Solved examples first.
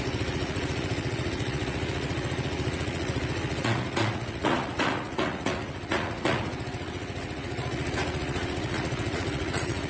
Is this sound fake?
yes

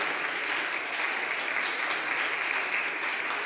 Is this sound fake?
no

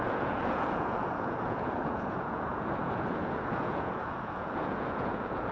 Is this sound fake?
yes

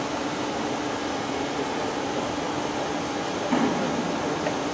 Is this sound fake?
no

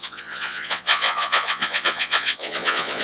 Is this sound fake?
yes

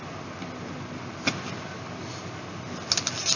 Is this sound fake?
no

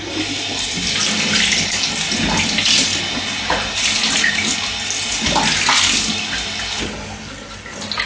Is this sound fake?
no